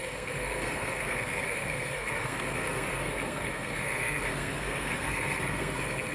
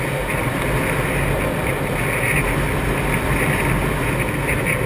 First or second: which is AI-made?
first